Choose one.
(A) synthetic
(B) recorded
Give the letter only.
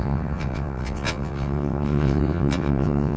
A